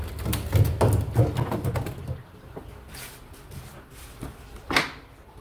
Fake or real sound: real